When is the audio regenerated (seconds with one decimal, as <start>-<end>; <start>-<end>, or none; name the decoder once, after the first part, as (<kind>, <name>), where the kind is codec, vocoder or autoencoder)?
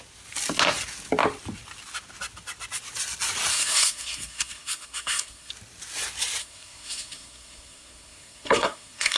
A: 3.5-5.5 (codec, SNAC); 6.4-9.2